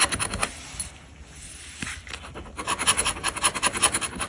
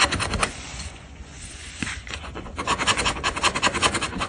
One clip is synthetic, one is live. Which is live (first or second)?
first